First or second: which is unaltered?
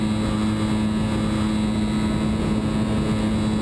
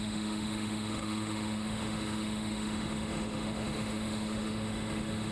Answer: first